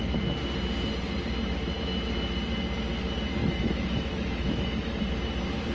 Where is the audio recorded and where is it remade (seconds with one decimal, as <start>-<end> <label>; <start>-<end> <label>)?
0.0-3.4 recorded; 3.4-5.0 remade; 5.0-5.7 recorded